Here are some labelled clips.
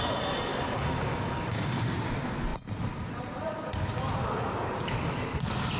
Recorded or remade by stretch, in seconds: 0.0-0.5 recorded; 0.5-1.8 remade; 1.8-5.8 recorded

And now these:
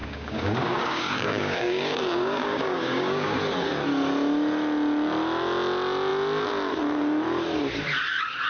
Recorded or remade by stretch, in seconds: 0.0-3.4 remade; 3.4-8.5 recorded

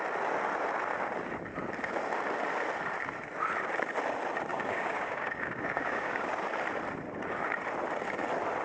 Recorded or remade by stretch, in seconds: 0.0-4.5 recorded; 4.5-6.3 remade; 6.3-8.6 recorded

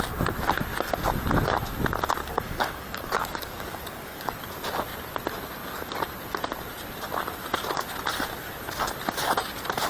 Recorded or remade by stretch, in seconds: 0.0-2.2 recorded; 2.2-4.4 remade; 4.4-9.9 recorded

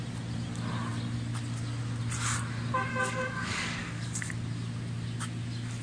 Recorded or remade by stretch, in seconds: 0.0-2.9 recorded; 2.9-4.3 remade; 4.3-5.8 recorded

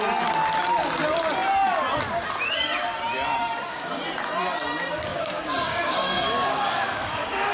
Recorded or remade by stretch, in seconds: 0.0-3.4 recorded; 3.4-4.0 remade; 4.0-5.1 recorded; 5.1-7.5 remade

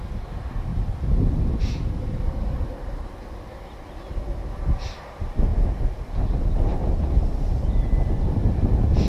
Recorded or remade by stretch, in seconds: 0.0-9.1 recorded